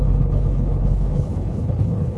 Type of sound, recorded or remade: remade